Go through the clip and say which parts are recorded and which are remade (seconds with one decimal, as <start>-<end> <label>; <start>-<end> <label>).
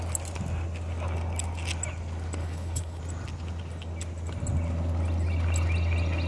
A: 0.0-2.4 recorded; 2.4-3.0 remade; 3.0-6.3 recorded